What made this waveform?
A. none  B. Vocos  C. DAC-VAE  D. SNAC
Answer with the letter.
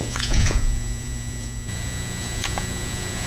B